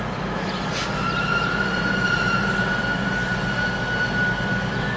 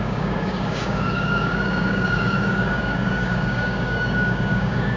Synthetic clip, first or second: second